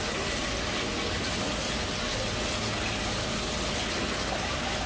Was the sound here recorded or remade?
recorded